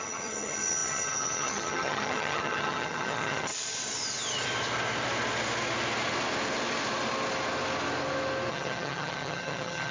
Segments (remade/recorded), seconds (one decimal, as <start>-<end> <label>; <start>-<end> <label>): 0.0-3.5 remade; 3.5-8.5 recorded; 8.5-9.9 remade